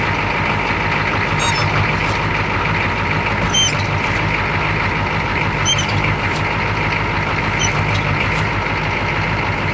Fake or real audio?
real